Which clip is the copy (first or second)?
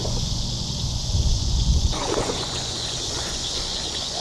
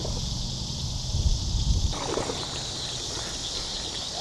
first